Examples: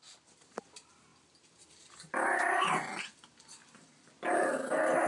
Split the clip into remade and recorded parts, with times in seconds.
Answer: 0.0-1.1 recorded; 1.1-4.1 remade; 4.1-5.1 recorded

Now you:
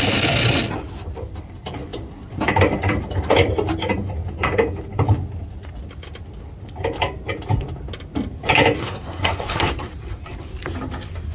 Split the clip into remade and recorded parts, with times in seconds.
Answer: 0.0-8.8 recorded; 8.8-9.7 remade; 9.7-11.3 recorded

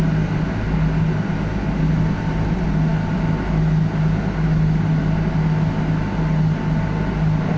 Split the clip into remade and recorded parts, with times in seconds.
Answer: 0.0-7.6 recorded

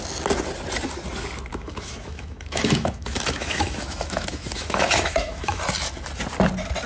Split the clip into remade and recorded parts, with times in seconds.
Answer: 0.0-1.5 recorded; 1.5-5.6 remade; 5.6-6.9 recorded